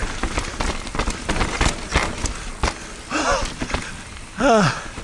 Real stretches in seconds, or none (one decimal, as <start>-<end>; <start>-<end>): 0.0-5.0